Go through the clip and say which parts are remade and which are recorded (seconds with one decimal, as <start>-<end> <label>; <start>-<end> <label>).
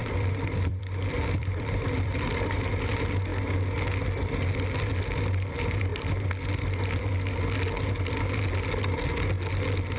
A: 0.0-2.6 remade; 2.6-10.0 recorded